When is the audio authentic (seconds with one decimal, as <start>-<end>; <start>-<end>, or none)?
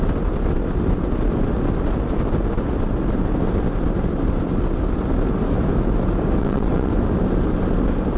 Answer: 0.0-6.4; 6.9-8.2